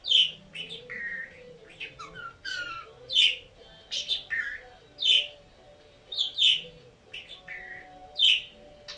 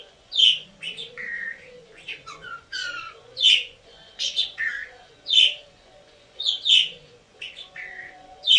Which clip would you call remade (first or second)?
second